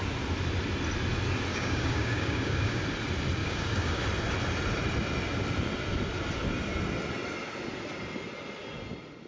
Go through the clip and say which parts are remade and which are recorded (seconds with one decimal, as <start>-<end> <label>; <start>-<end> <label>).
0.0-1.5 recorded; 1.5-2.8 remade; 2.8-3.4 recorded; 3.4-4.0 remade; 4.0-9.3 recorded

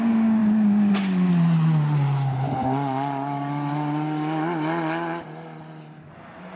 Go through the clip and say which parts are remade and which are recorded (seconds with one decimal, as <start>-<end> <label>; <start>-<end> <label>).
0.0-6.6 recorded

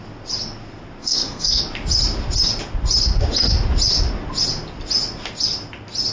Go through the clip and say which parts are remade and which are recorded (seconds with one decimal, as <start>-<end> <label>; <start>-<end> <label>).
0.0-1.0 recorded; 1.0-1.6 remade; 1.6-6.1 recorded

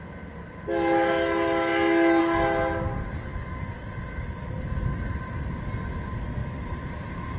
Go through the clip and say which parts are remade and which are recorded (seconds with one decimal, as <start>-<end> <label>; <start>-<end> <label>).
0.0-7.4 recorded

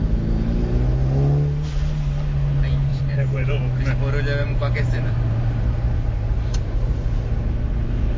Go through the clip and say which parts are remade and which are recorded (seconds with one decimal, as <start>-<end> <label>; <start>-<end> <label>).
0.0-2.9 recorded; 2.9-3.6 remade; 3.6-4.4 recorded; 4.4-7.3 remade; 7.3-8.2 recorded